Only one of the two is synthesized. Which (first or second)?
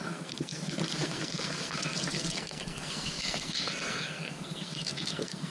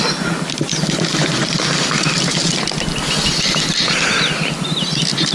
first